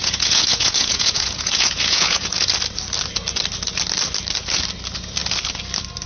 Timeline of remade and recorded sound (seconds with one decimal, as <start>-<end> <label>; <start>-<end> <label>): 0.0-2.5 remade; 2.5-6.1 recorded